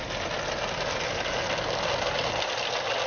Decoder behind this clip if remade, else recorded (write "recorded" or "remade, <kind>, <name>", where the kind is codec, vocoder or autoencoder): recorded